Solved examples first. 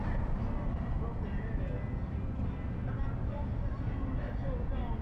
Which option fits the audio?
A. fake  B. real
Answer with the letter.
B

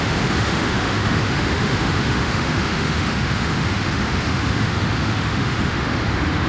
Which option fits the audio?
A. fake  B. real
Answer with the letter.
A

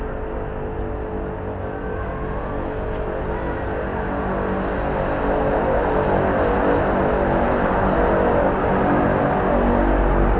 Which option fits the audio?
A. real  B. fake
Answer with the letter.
A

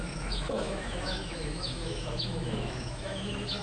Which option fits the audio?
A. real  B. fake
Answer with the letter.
B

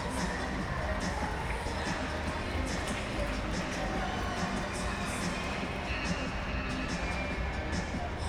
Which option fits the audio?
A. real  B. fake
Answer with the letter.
A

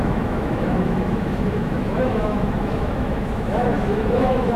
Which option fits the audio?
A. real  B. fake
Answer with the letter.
B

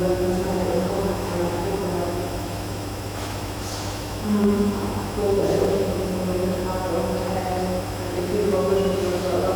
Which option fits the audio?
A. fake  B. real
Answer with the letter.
A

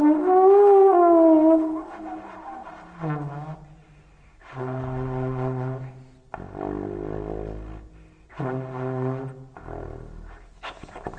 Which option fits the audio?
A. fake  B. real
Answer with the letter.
B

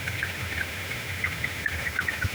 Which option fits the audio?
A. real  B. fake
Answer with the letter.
B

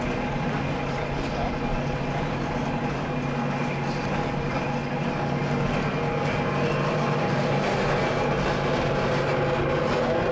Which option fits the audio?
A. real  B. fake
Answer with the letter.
A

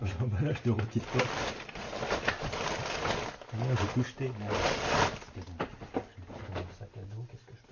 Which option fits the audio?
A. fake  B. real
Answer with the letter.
B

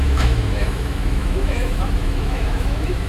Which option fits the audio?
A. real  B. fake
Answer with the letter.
B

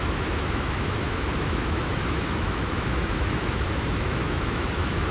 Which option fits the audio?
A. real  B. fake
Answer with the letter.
B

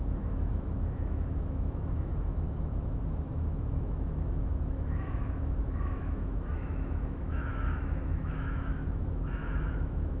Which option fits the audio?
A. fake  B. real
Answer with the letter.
A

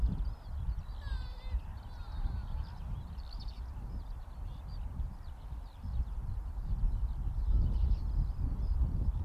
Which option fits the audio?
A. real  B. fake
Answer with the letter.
A